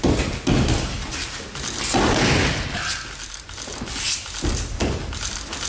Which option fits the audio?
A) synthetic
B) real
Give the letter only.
B